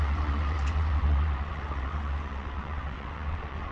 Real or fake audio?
fake